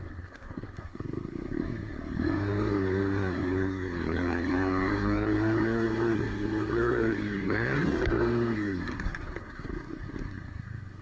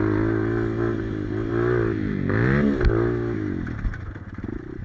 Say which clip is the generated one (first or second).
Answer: first